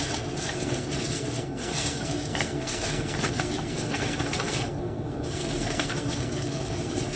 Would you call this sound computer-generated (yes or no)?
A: yes